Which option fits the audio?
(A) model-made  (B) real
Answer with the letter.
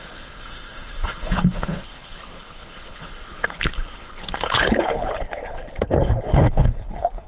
A